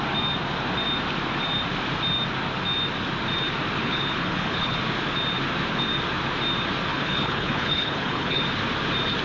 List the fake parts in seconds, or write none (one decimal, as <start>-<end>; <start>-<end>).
3.8-4.8; 6.9-8.4